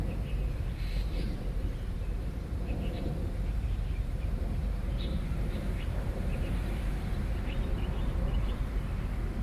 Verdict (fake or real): fake